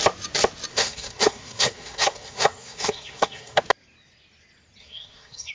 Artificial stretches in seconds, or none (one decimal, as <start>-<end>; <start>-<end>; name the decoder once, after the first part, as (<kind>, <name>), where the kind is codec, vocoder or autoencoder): 0.7-3.6 (codec, SNAC); 4.8-5.5